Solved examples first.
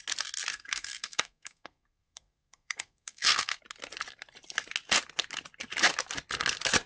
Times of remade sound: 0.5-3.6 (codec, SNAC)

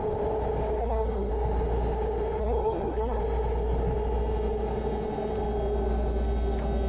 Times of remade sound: 0.8-1.3 (codec, SNAC); 2.4-3.2

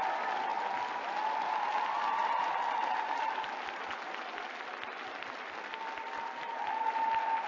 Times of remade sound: none

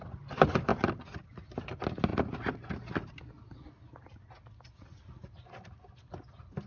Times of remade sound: none